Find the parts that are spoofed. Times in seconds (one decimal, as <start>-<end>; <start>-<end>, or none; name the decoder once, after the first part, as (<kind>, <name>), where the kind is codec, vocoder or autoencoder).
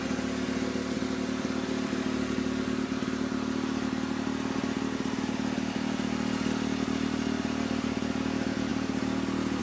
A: none